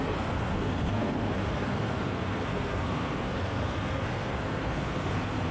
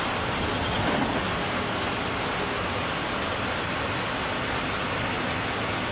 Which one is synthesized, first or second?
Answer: first